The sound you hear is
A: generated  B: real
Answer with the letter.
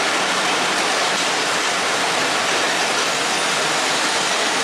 B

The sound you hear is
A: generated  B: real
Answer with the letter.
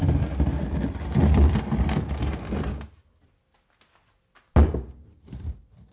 B